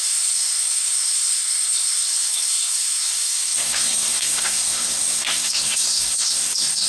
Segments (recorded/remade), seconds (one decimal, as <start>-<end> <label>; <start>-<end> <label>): 0.0-6.9 remade